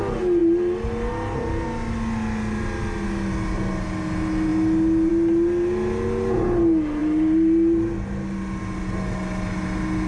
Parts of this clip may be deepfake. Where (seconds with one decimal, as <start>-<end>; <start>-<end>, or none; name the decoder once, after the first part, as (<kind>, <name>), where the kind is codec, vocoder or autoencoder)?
none